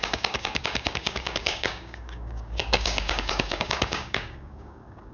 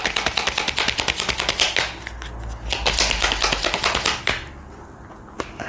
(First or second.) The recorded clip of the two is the second